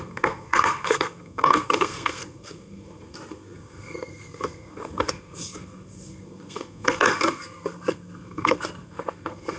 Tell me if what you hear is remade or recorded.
remade